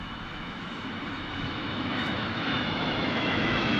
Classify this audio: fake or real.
fake